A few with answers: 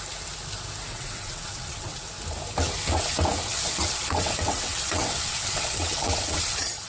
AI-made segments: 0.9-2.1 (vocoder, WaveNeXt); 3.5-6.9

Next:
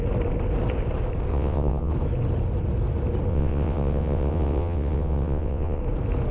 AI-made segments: 1.3-1.9 (vocoder, WaveNeXt); 3.3-5.8

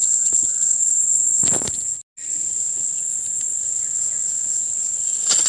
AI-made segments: 0.0-0.8 (vocoder, WaveNeXt); 2.3-3.0; 3.6-5.5

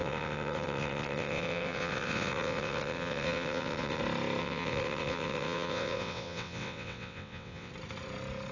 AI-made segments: 0.0-4.0 (vocoder, WaveNeXt); 4.4-7.7